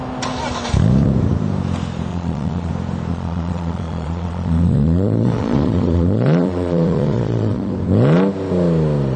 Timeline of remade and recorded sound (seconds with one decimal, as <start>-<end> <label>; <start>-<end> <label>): 0.0-2.1 recorded; 2.1-2.7 remade; 2.7-3.1 recorded; 3.1-7.7 remade; 7.7-9.2 recorded